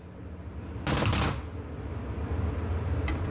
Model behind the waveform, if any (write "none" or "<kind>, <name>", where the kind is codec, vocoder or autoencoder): none